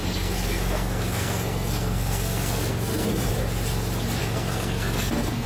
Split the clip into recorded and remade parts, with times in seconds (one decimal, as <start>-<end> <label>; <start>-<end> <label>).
0.0-3.3 remade; 3.3-4.2 recorded; 4.2-5.5 remade